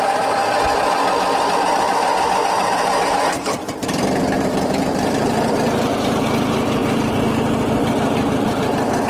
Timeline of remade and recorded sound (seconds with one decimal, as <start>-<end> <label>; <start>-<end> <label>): 0.0-0.4 remade; 0.4-1.5 recorded; 1.5-9.1 remade